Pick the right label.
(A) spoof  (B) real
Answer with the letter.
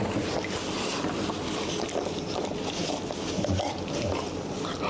B